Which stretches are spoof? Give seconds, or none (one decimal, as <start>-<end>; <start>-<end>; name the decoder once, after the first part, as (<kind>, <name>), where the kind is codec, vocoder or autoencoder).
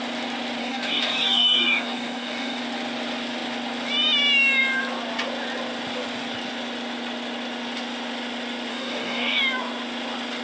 0.6-2.6 (codec, DAC); 8.7-9.4